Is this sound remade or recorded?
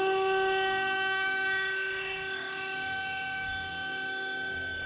remade